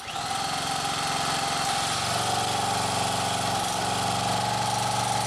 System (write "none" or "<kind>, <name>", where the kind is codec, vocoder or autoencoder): none